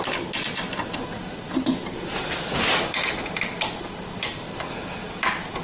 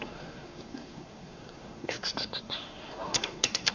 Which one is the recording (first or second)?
first